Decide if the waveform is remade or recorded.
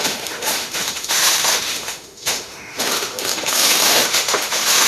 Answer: remade